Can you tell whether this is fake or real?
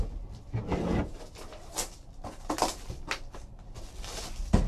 real